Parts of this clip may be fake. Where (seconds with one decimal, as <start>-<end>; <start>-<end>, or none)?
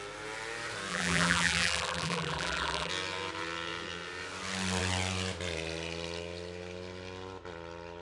0.9-2.9